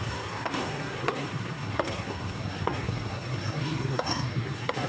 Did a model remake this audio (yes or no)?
yes